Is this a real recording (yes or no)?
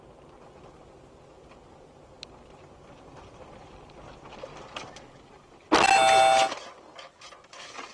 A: yes